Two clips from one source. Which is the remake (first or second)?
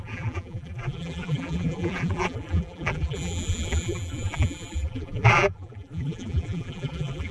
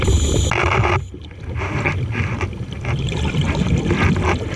first